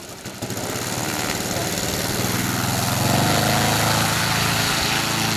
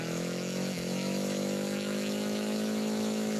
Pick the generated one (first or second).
second